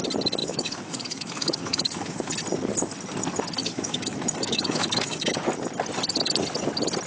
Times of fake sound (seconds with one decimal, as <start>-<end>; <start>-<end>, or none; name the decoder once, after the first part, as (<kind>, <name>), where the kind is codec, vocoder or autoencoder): 0.4-2.3 (autoencoder, DAC-VAE); 3.6-5.5